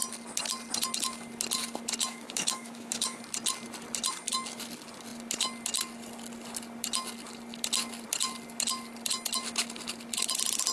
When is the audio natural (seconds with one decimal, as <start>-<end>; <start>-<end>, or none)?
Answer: 0.0-2.1; 3.2-10.7